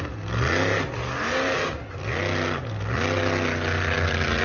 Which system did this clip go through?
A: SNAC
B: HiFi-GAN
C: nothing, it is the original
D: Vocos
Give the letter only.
C